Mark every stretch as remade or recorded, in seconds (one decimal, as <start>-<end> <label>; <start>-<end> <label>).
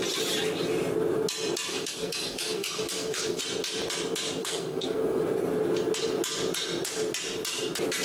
0.0-1.7 recorded; 1.7-3.4 remade; 3.4-4.4 recorded; 4.4-5.2 remade; 5.2-8.0 recorded